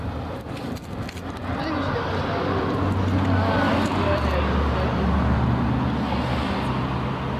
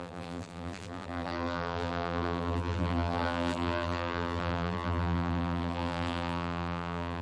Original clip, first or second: first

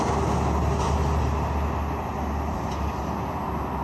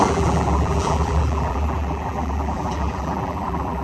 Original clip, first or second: first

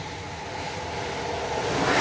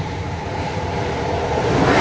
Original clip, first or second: first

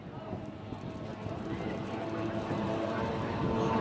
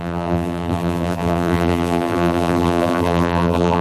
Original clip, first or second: first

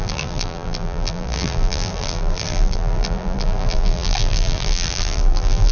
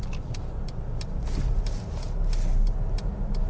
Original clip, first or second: second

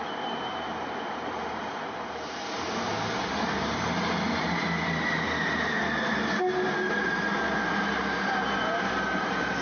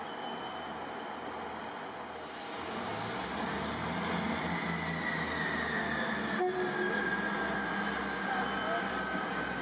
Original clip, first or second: second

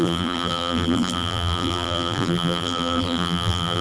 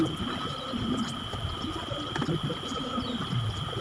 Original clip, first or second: second